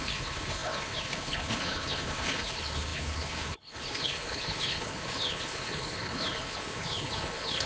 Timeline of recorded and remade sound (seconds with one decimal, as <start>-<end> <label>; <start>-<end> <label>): 0.0-7.7 remade